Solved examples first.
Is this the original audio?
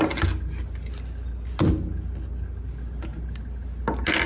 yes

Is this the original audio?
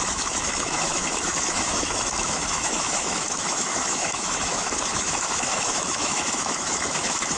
no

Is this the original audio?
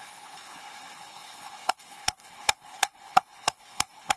no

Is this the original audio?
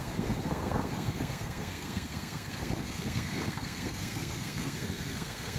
no